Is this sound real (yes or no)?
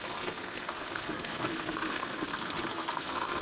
no